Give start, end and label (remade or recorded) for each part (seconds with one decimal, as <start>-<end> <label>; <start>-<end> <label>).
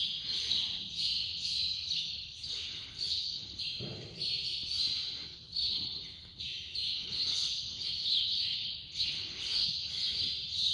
0.0-1.2 recorded; 1.2-3.6 remade; 3.6-5.3 recorded; 5.3-6.4 remade; 6.4-6.9 recorded; 6.9-9.9 remade; 9.9-10.7 recorded